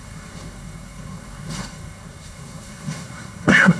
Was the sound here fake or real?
fake